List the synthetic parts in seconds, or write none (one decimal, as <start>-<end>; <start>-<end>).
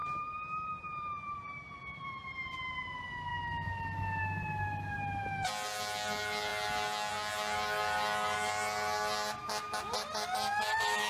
0.0-2.9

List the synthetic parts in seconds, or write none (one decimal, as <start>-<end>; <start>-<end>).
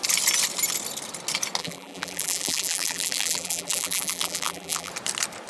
1.6-4.9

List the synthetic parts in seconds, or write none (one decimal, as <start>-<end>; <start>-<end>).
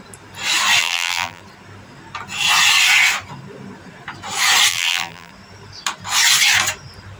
0.8-1.4; 4.7-5.3